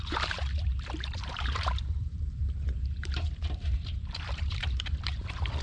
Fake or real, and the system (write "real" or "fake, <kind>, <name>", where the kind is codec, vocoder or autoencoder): fake, vocoder, BigVGAN v2